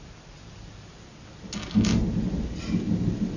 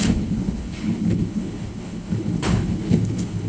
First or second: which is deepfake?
second